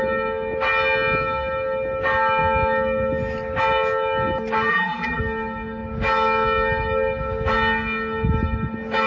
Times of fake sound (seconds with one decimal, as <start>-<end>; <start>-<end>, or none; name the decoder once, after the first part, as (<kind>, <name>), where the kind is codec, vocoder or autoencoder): 4.7-5.2 (vocoder, BigVGAN v2)